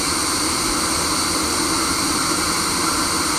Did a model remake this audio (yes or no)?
no